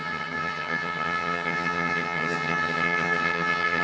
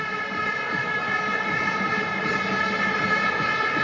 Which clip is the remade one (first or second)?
first